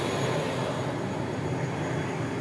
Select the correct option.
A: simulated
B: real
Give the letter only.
B